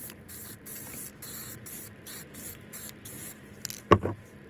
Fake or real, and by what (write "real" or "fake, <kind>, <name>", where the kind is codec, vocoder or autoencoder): fake, vocoder, BigVGAN v2